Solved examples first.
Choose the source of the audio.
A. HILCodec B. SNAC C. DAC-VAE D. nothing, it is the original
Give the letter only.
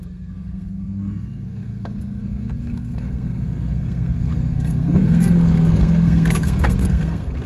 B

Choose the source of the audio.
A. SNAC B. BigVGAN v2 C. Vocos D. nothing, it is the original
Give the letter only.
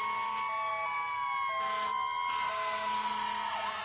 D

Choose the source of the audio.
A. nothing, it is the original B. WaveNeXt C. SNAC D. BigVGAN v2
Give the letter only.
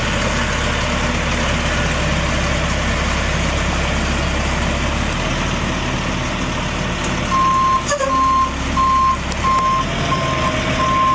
A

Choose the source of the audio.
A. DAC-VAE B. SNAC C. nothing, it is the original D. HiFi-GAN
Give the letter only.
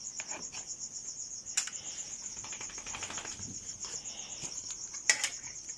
C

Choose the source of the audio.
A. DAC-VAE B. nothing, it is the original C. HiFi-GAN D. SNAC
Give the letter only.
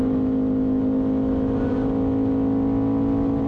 B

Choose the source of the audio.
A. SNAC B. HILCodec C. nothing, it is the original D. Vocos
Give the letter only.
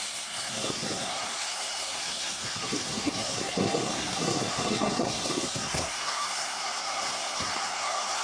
A